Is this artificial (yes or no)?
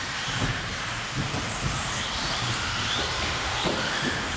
yes